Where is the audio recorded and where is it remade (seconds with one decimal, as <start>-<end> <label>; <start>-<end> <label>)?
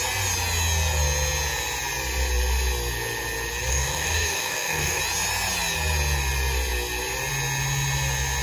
0.0-3.7 recorded; 3.7-5.0 remade; 5.0-8.4 recorded